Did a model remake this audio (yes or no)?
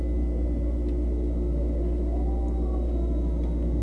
no